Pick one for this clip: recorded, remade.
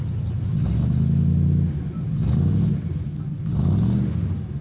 recorded